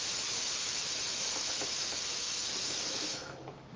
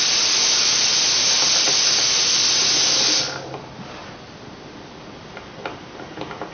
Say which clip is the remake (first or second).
first